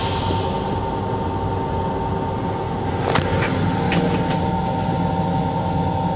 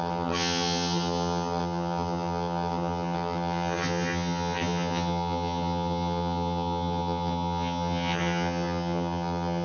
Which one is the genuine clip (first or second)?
first